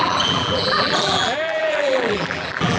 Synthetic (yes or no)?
yes